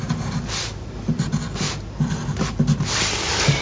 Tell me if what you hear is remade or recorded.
recorded